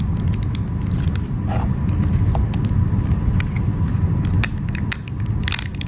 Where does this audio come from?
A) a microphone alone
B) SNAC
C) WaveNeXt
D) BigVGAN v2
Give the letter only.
A